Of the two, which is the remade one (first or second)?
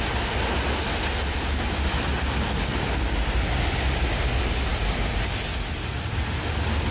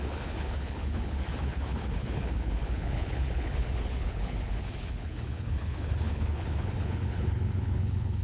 second